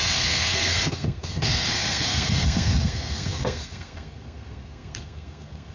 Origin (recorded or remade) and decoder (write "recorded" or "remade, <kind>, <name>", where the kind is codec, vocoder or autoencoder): remade, codec, SNAC